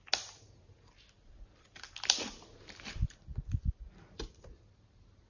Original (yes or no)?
yes